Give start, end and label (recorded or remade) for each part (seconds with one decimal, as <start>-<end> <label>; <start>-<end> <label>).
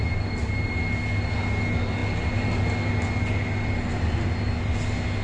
0.0-5.2 recorded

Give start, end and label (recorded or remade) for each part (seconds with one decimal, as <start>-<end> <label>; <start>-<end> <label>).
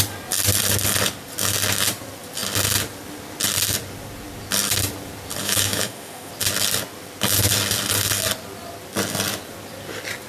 0.0-5.4 recorded; 5.4-6.3 remade; 6.3-10.3 recorded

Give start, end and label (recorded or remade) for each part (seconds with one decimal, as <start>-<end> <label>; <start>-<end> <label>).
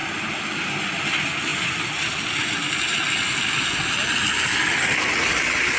0.0-5.8 recorded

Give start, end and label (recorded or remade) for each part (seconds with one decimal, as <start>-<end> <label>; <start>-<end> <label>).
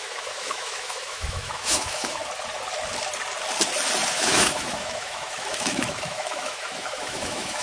0.0-2.2 remade; 2.2-4.1 recorded; 4.1-7.6 remade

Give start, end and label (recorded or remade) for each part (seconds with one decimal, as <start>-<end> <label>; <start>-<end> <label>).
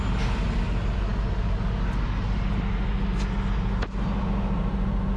0.0-5.2 recorded